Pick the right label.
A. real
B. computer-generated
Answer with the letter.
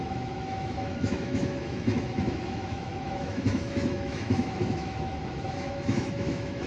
B